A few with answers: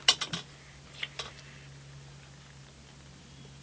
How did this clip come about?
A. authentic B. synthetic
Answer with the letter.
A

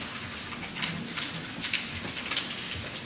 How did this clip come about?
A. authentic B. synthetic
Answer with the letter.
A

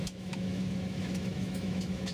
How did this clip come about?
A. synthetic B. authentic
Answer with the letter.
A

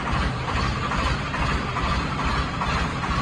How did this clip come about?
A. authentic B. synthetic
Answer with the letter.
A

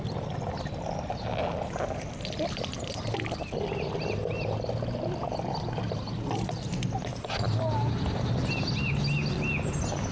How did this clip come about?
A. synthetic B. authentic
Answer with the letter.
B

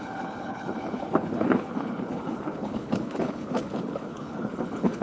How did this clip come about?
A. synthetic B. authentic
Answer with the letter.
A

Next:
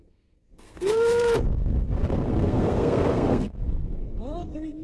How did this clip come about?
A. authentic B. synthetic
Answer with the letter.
B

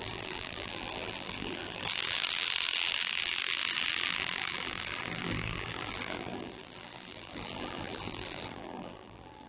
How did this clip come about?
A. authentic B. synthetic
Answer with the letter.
B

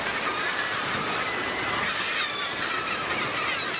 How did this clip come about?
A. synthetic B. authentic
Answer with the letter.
B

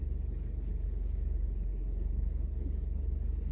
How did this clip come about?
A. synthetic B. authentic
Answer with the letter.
A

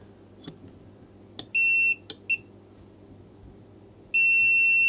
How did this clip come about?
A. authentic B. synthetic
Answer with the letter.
A